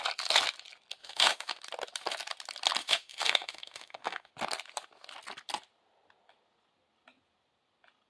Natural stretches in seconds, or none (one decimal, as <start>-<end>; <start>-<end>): 0.0-1.0; 1.6-2.8; 4.3-8.1